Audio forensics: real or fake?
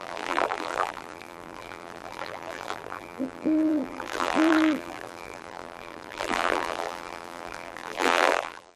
fake